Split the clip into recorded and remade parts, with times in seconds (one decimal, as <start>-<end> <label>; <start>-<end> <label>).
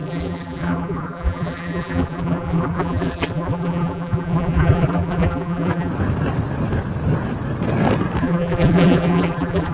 0.0-5.9 remade; 5.9-8.2 recorded; 8.2-9.7 remade